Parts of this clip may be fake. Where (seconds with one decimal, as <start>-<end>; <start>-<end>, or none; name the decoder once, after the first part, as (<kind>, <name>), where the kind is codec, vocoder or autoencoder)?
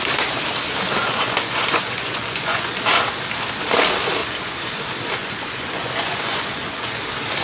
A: 1.0-2.7 (vocoder, Vocos); 4.2-4.8; 5.2-7.0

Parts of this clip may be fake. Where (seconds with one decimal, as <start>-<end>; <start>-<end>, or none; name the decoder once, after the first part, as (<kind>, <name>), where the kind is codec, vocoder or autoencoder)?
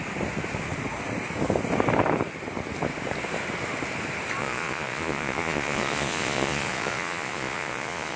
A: 4.4-8.2 (vocoder, Vocos)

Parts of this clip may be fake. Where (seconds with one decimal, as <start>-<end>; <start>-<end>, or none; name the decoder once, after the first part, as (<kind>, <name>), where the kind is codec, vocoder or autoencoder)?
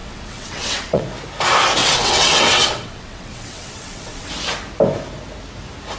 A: 0.0-1.0 (vocoder, WaveNeXt); 1.8-4.3